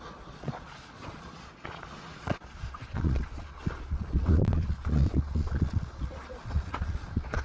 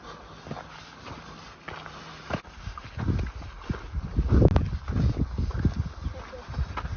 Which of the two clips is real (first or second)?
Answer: second